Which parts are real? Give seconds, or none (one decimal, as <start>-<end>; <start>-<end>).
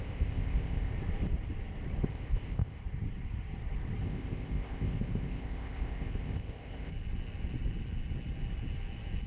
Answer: 0.9-2.1; 2.8-4.0; 6.9-9.3